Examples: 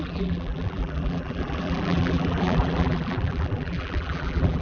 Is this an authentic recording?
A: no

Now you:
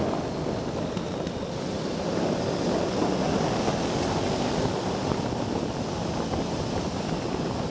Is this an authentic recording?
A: yes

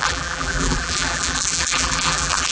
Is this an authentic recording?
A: no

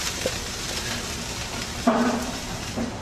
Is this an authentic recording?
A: no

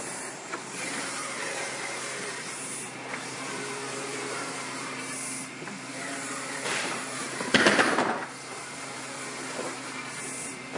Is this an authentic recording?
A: no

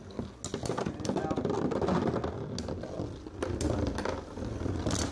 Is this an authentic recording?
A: yes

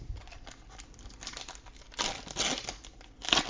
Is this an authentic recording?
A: yes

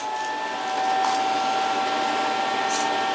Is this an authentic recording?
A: yes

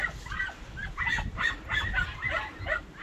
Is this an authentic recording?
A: yes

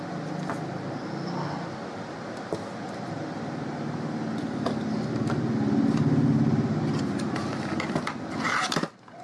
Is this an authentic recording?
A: yes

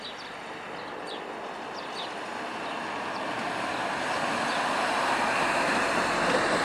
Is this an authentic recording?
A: yes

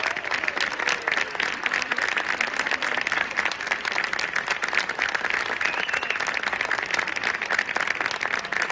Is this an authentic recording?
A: yes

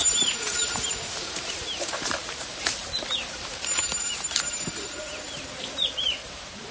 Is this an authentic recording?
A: no